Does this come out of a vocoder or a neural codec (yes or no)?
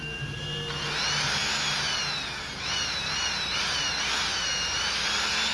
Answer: no